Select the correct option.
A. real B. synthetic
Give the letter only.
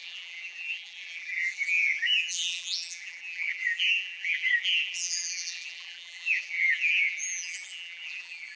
B